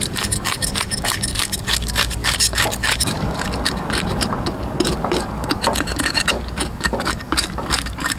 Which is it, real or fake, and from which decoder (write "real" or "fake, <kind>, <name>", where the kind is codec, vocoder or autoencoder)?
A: fake, codec, DAC